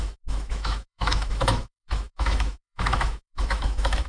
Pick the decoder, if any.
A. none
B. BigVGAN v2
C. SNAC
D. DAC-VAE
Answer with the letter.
D